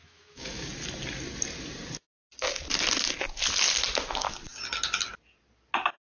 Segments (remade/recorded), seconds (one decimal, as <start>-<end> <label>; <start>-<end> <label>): 0.0-0.7 remade; 0.7-6.1 recorded